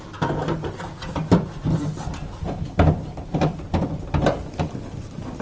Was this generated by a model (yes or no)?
no